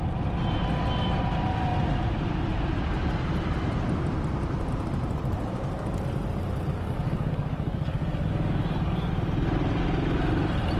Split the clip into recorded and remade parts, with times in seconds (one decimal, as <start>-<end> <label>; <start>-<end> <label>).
0.0-6.7 recorded; 6.7-9.1 remade; 9.1-10.8 recorded